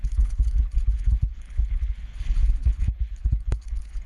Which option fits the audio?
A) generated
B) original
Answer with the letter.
A